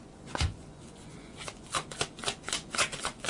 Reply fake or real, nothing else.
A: fake